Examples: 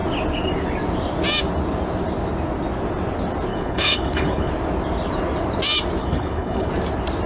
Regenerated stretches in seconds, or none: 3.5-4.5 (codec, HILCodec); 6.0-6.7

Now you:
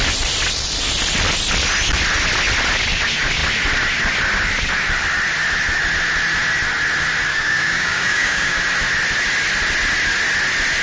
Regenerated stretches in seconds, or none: 7.3-8.6 (codec, DAC)

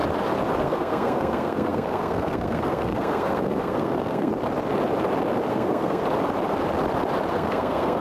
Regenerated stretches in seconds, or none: 0.6-4.3 (codec, SNAC); 5.5-6.0; 7.3-8.0

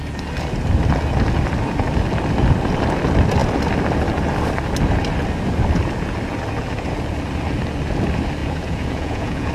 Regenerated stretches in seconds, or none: 8.4-9.5 (vocoder, Vocos)

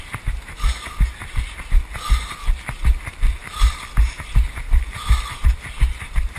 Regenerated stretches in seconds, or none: none

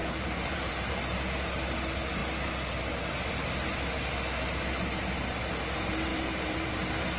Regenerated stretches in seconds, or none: 0.0-0.7 (vocoder, BigVGAN v2); 6.1-6.8

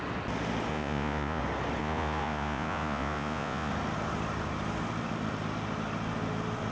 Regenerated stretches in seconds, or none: 0.7-1.4 (vocoder, Vocos); 1.8-3.7